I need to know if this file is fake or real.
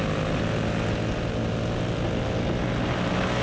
real